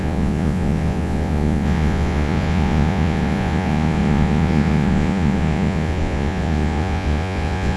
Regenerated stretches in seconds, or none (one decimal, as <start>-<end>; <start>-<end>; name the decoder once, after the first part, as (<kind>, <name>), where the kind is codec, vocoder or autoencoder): 0.0-7.8 (vocoder, Vocos)

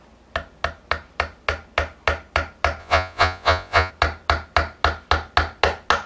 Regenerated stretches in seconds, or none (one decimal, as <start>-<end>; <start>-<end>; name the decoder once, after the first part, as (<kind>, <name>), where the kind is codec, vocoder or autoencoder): 2.8-3.9 (vocoder, Vocos)